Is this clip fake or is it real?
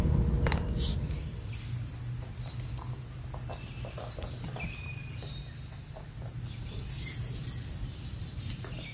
real